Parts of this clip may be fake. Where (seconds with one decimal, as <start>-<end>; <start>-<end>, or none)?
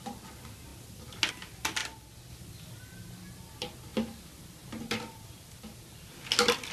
none